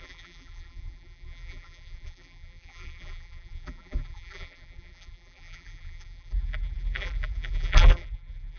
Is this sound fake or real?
fake